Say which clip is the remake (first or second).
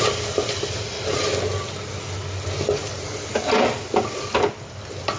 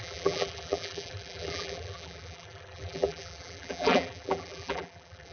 second